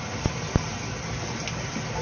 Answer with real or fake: real